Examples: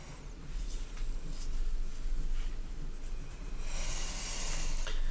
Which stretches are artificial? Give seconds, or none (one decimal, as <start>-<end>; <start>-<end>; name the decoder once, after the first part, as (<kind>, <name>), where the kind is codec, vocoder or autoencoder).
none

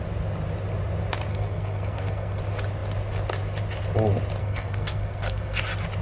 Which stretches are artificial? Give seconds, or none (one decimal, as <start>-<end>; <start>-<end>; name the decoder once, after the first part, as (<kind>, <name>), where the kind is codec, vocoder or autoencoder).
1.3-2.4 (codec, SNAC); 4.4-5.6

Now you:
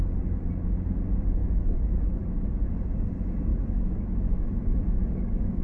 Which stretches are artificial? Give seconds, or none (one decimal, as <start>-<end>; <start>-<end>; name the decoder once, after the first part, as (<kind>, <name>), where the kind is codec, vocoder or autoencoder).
1.4-2.7 (autoencoder, DAC-VAE); 3.5-5.6